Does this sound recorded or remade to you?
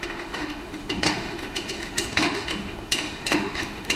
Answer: remade